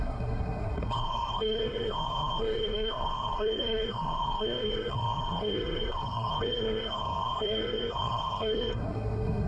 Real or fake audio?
fake